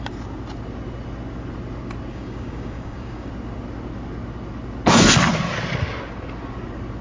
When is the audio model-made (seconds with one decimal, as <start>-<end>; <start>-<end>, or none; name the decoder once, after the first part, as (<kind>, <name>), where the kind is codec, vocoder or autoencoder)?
2.1-3.3 (codec, DAC)